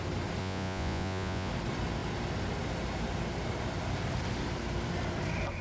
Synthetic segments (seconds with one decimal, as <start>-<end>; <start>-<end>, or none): 0.4-1.5